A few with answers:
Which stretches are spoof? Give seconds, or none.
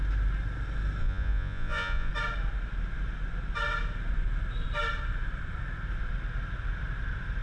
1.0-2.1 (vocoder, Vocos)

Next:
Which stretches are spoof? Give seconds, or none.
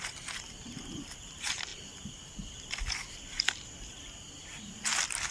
none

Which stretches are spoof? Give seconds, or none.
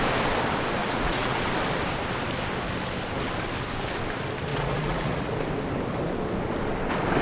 0.8-1.4 (vocoder, Vocos); 4.5-5.3